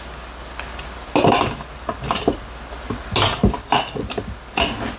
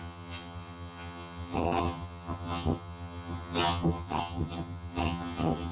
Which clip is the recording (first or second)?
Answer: first